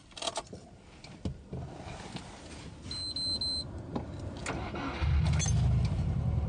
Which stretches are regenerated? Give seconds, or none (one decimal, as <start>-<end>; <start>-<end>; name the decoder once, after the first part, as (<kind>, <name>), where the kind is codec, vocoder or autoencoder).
none

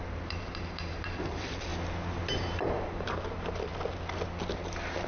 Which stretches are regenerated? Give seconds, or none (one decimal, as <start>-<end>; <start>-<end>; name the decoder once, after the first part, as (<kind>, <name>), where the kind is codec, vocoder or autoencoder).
0.0-1.7 (vocoder, BigVGAN v2); 2.6-3.7; 4.5-5.1

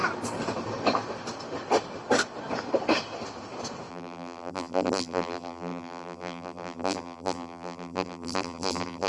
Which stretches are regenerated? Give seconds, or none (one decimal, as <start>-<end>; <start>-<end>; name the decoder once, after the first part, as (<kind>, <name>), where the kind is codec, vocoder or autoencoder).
3.9-9.1 (vocoder, BigVGAN v2)

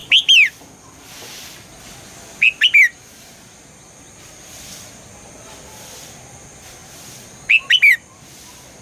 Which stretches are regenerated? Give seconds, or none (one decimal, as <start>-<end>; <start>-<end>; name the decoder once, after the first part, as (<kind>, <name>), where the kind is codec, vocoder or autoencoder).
3.8-6.8 (vocoder, BigVGAN v2)

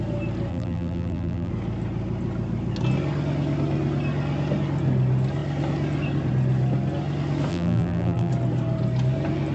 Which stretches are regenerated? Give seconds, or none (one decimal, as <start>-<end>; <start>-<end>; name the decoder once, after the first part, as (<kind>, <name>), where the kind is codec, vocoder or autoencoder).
0.5-1.5 (vocoder, BigVGAN v2); 7.5-8.3

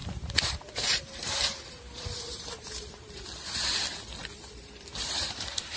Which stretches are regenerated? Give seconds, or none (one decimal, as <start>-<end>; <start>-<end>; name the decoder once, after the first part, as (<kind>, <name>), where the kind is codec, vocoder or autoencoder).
0.0-3.2 (vocoder, BigVGAN v2); 4.2-5.8